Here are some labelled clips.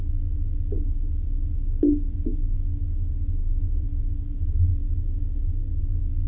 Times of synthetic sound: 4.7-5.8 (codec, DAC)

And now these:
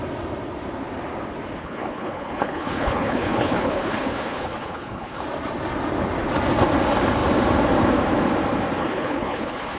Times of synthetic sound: 1.6-5.2 (codec, HILCodec); 8.8-9.8

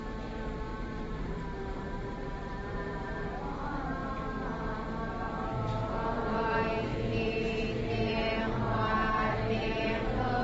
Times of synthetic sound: 0.7-3.4 (vocoder, BigVGAN v2)

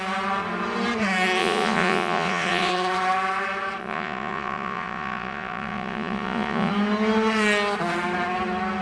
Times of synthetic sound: 1.4-2.7 (vocoder, Vocos); 3.8-6.7

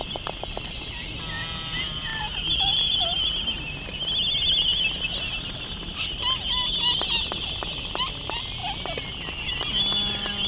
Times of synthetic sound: none

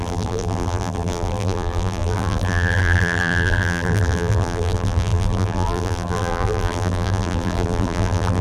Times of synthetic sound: 0.0-8.4 (vocoder, BigVGAN v2)

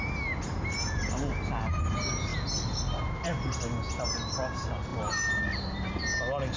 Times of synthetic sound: none

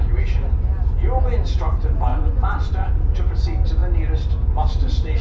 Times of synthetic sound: 2.1-2.9 (vocoder, Vocos)